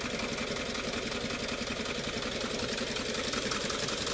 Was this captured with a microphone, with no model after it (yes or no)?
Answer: yes